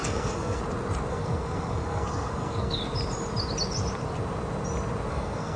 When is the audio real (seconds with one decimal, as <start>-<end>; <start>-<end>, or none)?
0.6-1.1; 2.8-5.1